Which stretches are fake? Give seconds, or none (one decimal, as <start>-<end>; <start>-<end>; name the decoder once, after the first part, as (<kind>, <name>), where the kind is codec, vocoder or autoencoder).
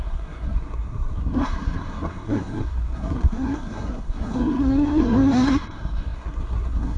0.0-7.0 (codec, SNAC)